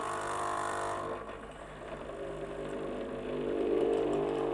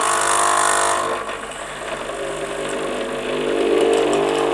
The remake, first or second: first